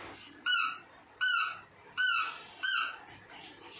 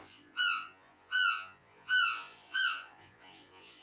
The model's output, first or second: second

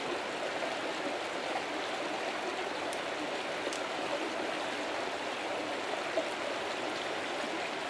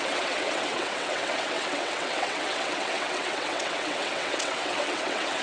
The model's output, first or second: second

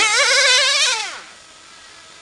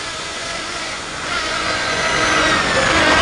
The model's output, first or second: second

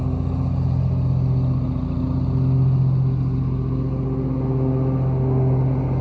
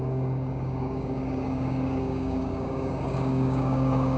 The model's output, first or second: second